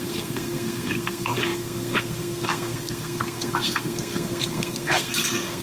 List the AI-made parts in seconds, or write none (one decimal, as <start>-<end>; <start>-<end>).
0.0-5.6